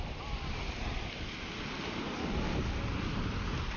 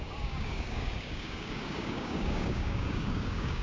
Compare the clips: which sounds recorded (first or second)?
first